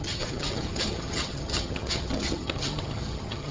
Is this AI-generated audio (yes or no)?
yes